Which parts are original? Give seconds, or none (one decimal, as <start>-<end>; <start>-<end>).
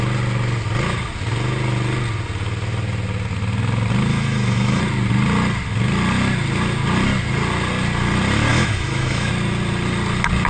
0.0-4.1; 4.8-8.5; 9.3-10.5